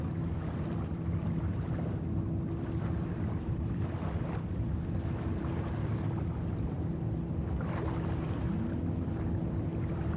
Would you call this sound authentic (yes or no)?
yes